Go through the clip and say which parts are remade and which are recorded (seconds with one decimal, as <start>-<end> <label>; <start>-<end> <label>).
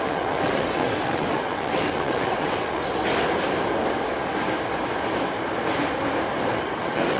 0.0-2.8 remade; 2.8-6.6 recorded; 6.6-7.2 remade